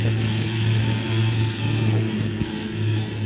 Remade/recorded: remade